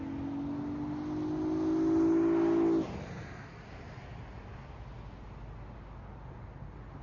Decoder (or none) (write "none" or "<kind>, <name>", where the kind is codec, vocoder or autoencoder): none